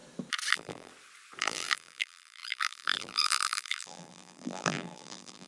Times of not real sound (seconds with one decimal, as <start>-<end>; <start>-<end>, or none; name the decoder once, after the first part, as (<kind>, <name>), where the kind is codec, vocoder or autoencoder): 0.5-0.9 (vocoder, BigVGAN v2); 1.4-5.5